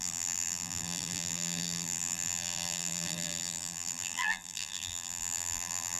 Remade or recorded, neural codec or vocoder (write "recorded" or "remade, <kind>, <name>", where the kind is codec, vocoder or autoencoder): remade, vocoder, BigVGAN v2